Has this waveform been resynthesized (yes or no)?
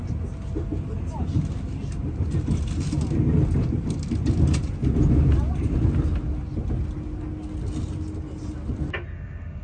no